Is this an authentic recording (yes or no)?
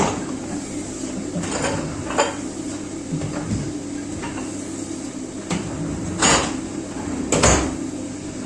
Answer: yes